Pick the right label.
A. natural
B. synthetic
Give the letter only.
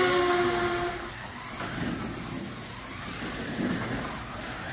A